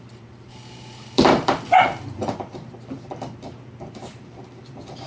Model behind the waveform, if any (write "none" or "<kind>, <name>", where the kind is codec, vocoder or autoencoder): vocoder, BigVGAN v2